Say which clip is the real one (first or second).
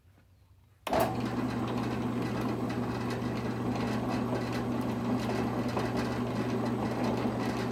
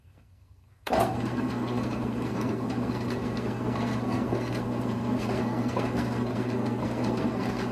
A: first